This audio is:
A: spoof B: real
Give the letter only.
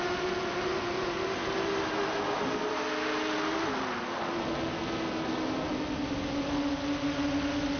B